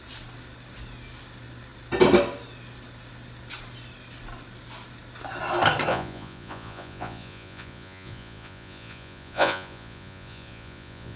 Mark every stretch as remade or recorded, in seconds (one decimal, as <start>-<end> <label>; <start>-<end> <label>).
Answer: 0.0-5.9 recorded; 5.9-11.2 remade